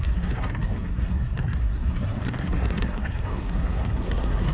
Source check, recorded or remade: remade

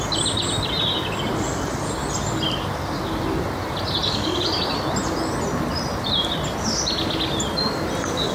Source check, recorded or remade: recorded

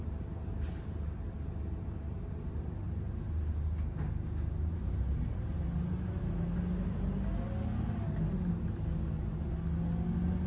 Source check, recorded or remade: recorded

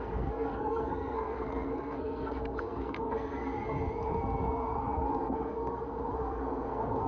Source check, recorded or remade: remade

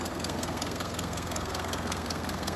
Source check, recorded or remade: remade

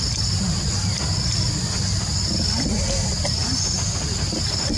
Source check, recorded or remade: recorded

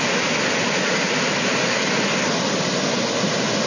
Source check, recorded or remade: recorded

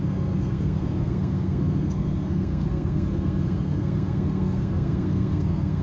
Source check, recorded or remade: remade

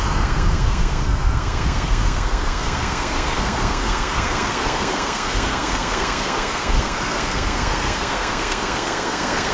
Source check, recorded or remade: remade